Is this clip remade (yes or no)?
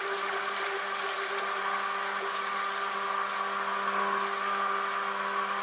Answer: no